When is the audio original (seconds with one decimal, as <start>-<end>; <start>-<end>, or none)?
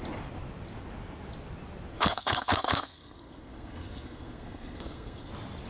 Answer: 0.0-1.9; 5.3-5.7